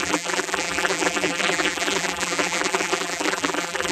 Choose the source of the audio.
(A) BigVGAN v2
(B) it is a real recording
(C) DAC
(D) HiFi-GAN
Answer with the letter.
A